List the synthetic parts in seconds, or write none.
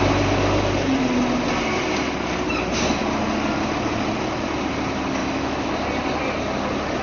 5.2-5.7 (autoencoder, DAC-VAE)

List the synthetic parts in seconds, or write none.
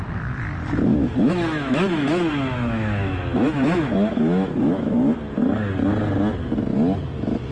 0.9-5.4 (autoencoder, DAC-VAE)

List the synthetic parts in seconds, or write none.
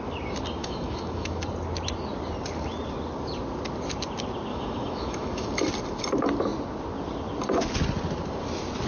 0.6-1.4 (autoencoder, DAC-VAE); 4.5-5.6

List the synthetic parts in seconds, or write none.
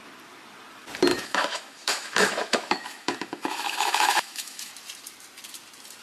1.1-4.7 (autoencoder, DAC-VAE)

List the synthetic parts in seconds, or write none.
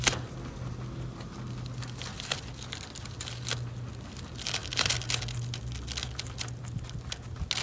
none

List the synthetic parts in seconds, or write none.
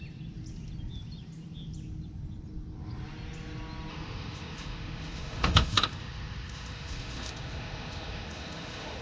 3.9-9.0 (autoencoder, DAC-VAE)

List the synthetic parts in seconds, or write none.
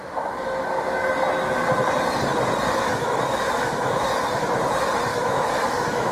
0.0-0.6 (autoencoder, DAC-VAE); 2.9-4.0; 5.1-6.1